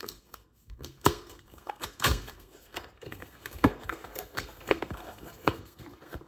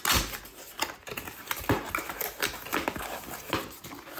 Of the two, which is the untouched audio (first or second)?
second